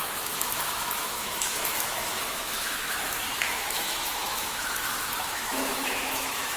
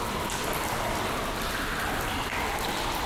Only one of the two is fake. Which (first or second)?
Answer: first